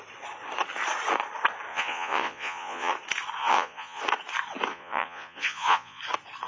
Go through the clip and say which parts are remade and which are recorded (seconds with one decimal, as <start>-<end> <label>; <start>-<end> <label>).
0.0-1.7 recorded; 1.7-2.9 remade; 2.9-3.4 recorded; 3.4-4.0 remade; 4.0-4.7 recorded; 4.7-6.0 remade; 6.0-6.5 recorded